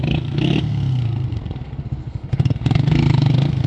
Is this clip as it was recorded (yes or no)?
no